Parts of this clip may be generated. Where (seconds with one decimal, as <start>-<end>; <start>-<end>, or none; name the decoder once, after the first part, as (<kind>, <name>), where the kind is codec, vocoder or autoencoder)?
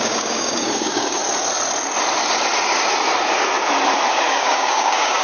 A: 0.0-1.2 (codec, DAC); 4.3-5.2